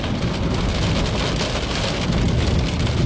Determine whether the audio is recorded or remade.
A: recorded